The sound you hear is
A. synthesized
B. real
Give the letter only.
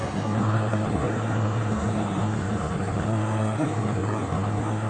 A